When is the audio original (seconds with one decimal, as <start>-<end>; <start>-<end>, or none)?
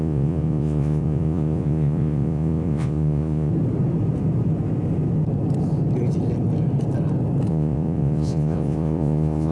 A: 3.5-7.5